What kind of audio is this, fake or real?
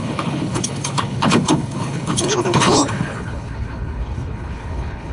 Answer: fake